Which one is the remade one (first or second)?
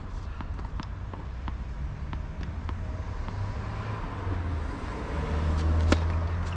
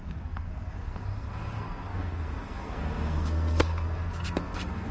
second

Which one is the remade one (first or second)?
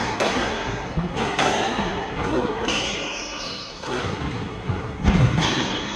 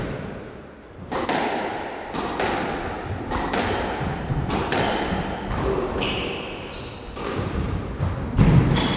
first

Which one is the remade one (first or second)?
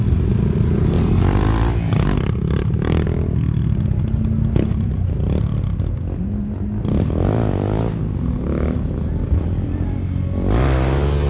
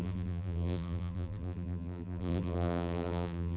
second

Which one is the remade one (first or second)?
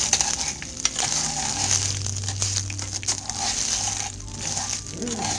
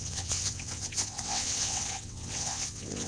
second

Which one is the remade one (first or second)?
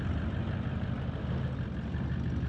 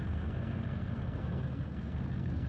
second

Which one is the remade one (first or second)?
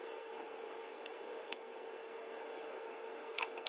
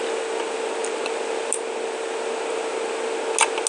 first